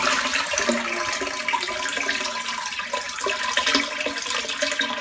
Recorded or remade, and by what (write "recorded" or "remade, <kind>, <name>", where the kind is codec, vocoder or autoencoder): recorded